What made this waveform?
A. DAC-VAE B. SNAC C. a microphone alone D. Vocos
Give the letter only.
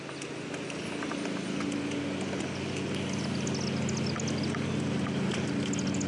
C